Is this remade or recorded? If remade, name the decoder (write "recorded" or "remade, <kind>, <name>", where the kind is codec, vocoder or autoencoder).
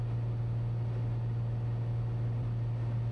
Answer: recorded